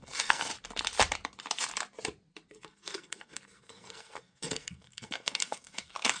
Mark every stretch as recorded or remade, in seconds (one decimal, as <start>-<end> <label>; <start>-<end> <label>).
0.0-0.5 remade; 0.5-2.5 recorded; 2.5-6.2 remade

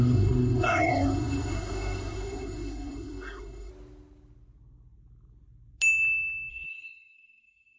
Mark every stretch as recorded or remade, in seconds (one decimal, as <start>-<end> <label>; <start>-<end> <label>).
0.0-3.7 remade; 3.7-6.5 recorded; 6.5-7.8 remade

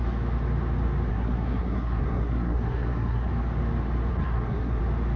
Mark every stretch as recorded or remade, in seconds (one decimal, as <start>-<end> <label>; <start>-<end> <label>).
0.0-1.1 recorded; 1.1-3.3 remade; 3.3-4.1 recorded; 4.1-4.8 remade; 4.8-5.2 recorded

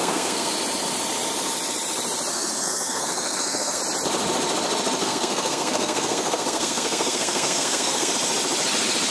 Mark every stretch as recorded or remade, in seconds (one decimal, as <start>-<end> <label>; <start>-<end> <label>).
0.0-0.5 remade; 0.5-2.3 recorded; 2.3-3.8 remade; 3.8-5.0 recorded; 5.0-8.1 remade; 8.1-9.1 recorded

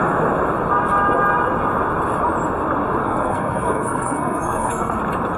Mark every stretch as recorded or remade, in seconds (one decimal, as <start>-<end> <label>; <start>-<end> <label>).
0.0-3.0 recorded; 3.0-5.0 remade; 5.0-5.4 recorded

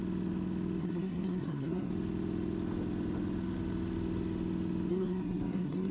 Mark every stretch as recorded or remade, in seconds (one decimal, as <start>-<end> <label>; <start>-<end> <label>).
0.0-0.8 recorded; 0.8-1.9 remade; 1.9-4.9 recorded; 4.9-5.9 remade